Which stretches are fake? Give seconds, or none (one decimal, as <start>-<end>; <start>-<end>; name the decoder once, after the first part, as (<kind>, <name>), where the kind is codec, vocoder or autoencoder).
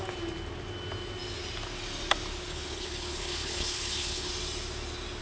2.5-4.3 (codec, HILCodec)